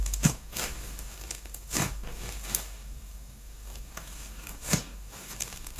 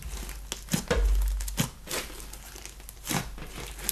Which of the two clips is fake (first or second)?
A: first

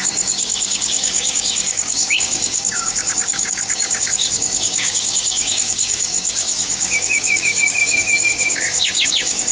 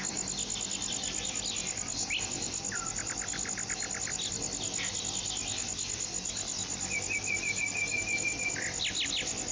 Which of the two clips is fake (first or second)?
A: first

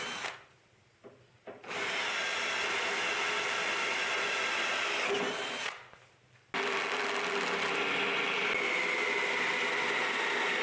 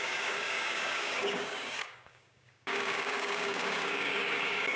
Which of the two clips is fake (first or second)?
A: second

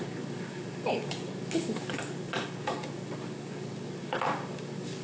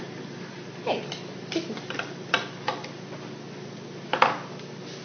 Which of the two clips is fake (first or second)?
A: first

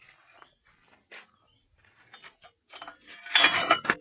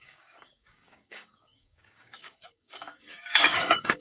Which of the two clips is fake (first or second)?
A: second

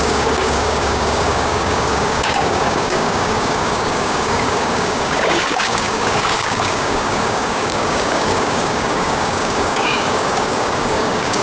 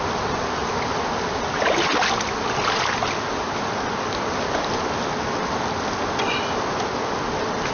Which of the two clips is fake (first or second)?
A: first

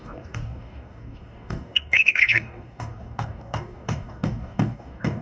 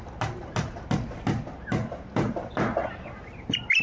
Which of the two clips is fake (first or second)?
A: first